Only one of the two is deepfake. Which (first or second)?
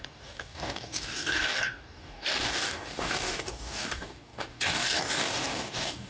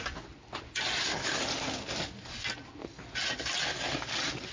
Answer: first